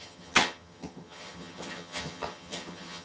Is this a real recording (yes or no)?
no